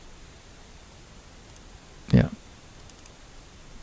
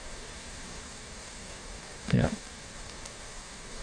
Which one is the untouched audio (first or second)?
first